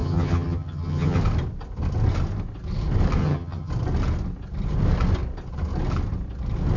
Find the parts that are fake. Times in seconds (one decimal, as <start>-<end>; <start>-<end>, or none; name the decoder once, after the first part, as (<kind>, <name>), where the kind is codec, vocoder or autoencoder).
0.0-1.2 (vocoder, HiFi-GAN); 3.2-3.7